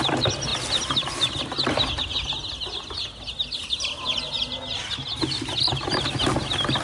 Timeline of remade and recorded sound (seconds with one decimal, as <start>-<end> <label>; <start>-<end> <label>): 0.0-6.8 recorded